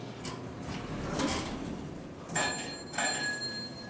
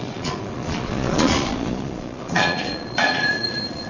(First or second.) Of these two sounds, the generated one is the second